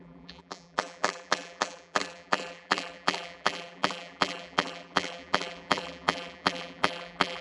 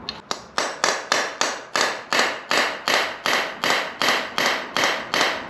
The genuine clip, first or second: second